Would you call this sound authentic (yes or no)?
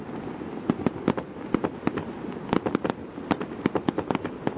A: yes